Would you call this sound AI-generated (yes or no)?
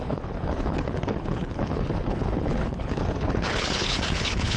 yes